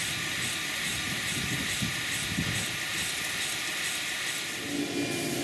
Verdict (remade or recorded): recorded